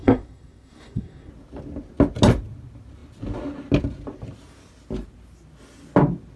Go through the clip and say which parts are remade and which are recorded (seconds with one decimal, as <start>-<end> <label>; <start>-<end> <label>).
0.0-1.3 remade; 1.3-6.4 recorded